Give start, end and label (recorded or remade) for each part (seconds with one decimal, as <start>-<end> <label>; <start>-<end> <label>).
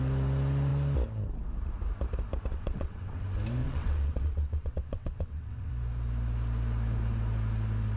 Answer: 0.0-2.5 recorded; 2.5-3.2 remade; 3.2-3.6 recorded; 3.6-5.7 remade; 5.7-8.0 recorded